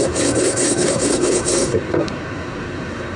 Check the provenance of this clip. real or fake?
fake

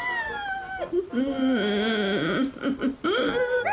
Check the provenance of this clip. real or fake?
real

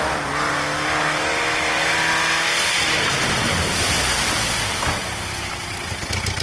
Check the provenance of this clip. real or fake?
real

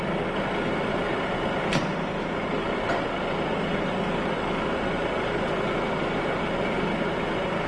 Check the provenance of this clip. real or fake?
real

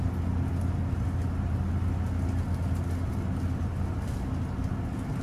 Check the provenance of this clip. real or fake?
real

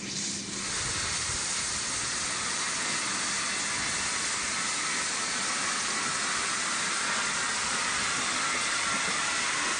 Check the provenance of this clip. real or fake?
real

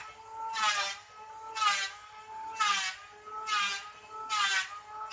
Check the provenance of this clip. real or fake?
real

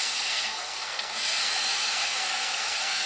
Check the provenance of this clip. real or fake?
fake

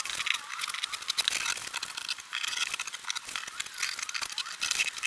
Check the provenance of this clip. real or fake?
real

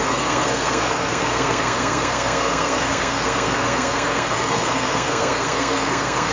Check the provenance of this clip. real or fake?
fake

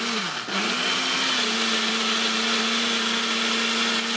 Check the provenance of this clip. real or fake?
real